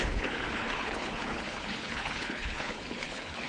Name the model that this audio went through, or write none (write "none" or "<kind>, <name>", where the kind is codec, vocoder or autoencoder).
codec, HILCodec